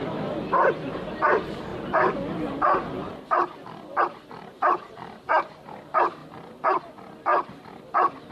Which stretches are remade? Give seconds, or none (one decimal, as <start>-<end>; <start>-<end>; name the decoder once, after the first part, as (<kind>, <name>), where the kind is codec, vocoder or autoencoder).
7.3-8.3 (vocoder, BigVGAN v2)